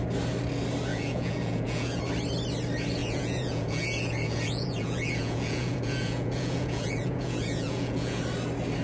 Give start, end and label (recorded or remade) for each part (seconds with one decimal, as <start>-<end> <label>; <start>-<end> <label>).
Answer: 0.0-0.9 recorded; 0.9-2.0 remade; 2.0-3.0 recorded; 3.0-8.2 remade; 8.2-8.8 recorded